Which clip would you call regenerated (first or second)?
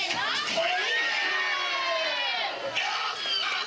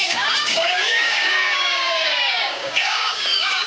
second